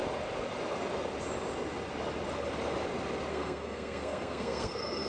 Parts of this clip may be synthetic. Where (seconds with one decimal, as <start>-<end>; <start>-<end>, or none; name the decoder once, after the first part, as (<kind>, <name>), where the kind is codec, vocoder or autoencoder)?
3.3-5.1 (codec, SNAC)